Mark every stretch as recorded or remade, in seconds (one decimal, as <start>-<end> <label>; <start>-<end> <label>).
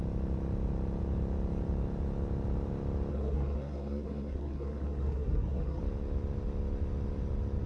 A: 0.0-3.1 recorded; 3.1-5.8 remade; 5.8-7.7 recorded